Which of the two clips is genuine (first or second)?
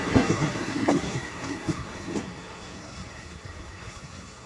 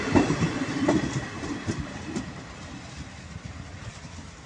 second